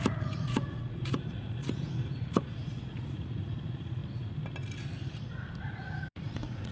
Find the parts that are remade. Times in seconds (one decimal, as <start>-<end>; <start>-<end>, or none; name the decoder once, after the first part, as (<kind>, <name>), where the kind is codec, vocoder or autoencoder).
0.0-4.0 (vocoder, Vocos); 5.6-6.7